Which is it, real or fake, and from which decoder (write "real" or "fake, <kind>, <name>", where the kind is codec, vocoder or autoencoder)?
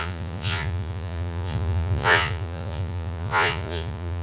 fake, vocoder, Vocos